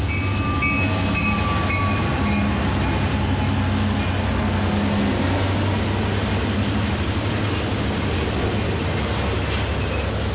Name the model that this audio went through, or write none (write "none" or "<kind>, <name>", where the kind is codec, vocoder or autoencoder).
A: none